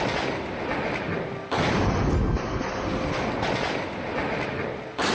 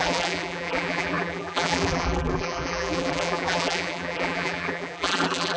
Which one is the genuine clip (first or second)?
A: first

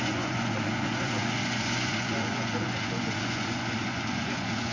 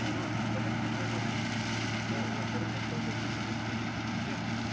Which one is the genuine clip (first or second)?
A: second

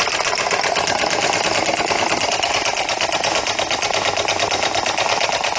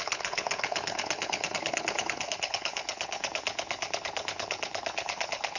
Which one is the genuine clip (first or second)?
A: first